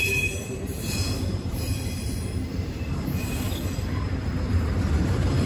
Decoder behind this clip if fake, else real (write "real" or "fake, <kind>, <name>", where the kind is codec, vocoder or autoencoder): fake, vocoder, BigVGAN v2